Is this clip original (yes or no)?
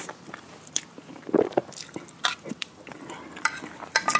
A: yes